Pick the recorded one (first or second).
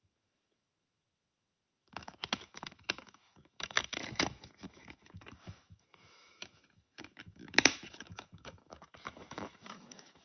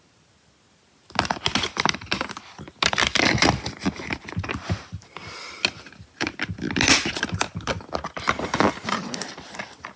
second